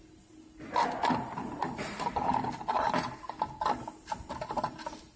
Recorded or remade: recorded